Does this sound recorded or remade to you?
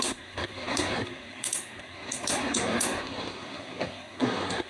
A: remade